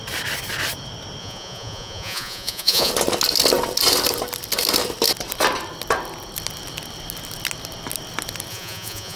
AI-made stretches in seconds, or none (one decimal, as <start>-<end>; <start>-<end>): 1.2-2.9; 8.5-9.2